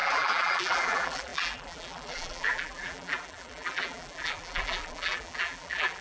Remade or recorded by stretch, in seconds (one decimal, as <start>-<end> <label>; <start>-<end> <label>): 0.0-6.0 remade